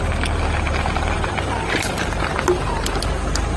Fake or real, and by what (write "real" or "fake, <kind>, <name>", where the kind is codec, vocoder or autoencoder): real